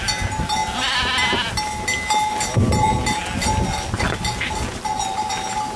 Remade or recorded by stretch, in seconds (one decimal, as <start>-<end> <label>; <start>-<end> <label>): 0.0-5.8 recorded